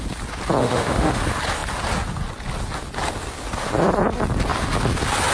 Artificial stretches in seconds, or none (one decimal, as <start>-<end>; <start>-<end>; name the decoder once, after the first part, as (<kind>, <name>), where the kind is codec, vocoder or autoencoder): 0.6-1.2 (autoencoder, DAC-VAE)